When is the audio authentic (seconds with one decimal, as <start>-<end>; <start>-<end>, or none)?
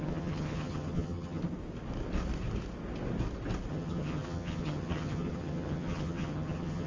1.4-3.7